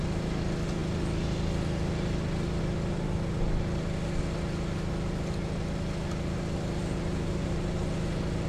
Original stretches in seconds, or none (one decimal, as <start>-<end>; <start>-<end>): 0.0-8.5